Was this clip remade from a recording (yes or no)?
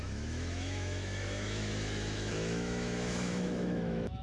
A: yes